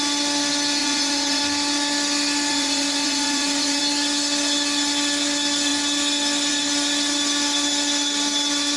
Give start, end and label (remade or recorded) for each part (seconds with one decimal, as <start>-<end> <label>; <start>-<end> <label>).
0.0-0.8 recorded; 0.8-1.4 remade; 1.4-2.5 recorded; 2.5-3.8 remade; 3.8-8.8 recorded